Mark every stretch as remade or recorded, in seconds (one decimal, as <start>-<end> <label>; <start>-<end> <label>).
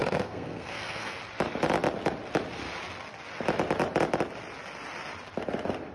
0.0-1.2 remade; 1.2-5.9 recorded